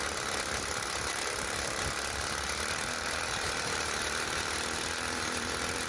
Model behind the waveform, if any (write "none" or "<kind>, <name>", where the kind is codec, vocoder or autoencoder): none